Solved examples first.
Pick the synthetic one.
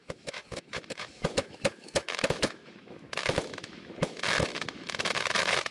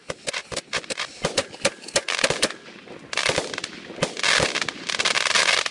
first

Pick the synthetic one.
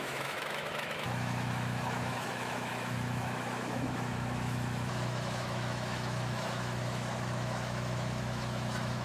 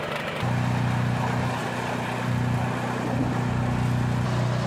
first